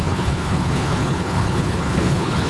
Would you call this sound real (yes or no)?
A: no